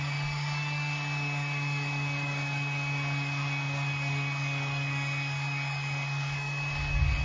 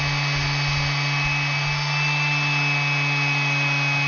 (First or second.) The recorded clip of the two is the second